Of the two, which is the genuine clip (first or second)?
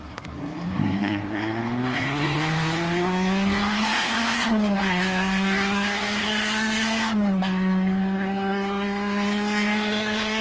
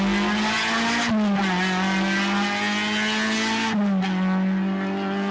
second